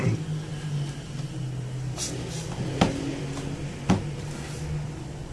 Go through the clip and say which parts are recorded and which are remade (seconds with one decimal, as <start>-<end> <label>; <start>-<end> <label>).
0.0-5.3 recorded